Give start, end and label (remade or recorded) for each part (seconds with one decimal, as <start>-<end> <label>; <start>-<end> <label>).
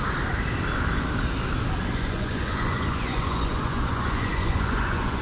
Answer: 0.0-1.9 recorded; 1.9-5.2 remade